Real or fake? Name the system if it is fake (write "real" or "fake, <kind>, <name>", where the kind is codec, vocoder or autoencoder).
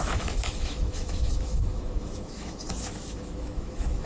fake, autoencoder, DAC-VAE